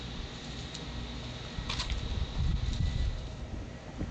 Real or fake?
real